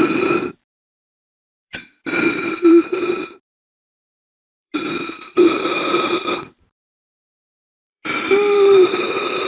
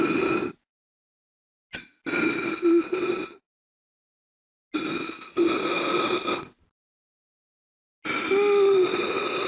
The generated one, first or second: first